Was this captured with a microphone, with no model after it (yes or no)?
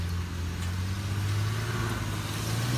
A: yes